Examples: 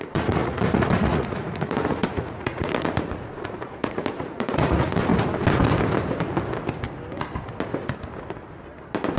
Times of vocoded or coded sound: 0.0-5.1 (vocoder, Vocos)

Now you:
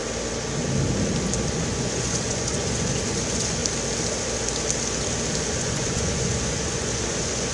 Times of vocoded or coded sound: 1.6-3.6 (vocoder, Vocos); 5.4-7.5

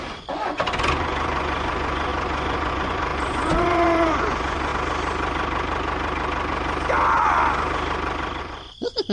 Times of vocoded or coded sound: 0.0-4.7 (vocoder, Vocos); 8.4-9.1

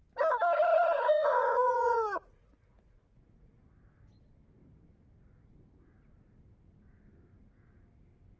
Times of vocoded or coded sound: 0.7-3.6 (vocoder, Vocos)

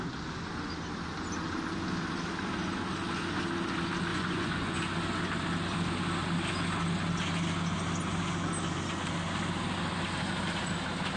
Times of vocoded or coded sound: 4.1-4.8 (vocoder, Vocos)

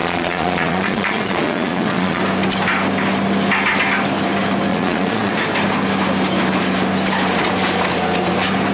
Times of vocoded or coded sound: 0.0-2.2 (vocoder, Vocos); 4.7-5.3

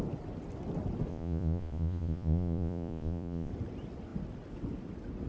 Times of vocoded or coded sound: 1.1-3.5 (vocoder, Vocos)